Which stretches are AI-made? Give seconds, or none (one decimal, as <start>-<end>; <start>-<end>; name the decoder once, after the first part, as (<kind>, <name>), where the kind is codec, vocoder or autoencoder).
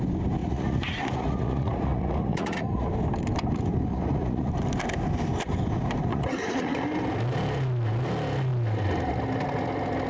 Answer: 0.4-2.9 (vocoder, Vocos); 3.9-4.5; 6.1-6.8